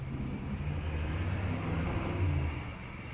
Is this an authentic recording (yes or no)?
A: yes